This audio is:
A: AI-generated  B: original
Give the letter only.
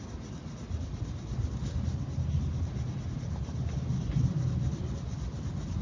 B